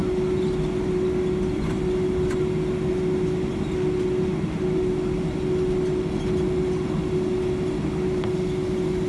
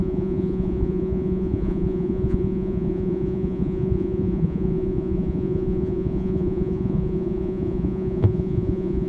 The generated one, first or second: second